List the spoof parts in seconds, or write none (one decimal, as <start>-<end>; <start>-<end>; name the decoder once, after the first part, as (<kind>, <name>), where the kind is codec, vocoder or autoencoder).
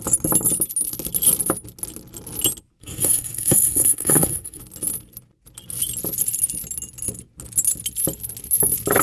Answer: 2.8-4.6 (codec, SNAC)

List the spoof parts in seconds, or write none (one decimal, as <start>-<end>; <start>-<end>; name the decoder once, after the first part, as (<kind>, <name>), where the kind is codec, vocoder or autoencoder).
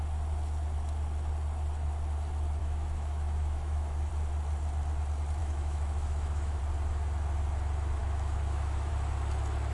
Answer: 2.6-4.1 (autoencoder, DAC-VAE); 5.4-6.6; 8.0-8.9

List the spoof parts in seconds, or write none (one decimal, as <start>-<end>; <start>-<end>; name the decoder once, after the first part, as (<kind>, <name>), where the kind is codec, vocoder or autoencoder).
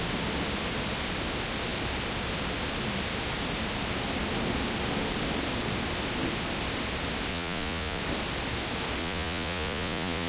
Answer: 7.3-8.0 (vocoder, Vocos); 9.0-10.3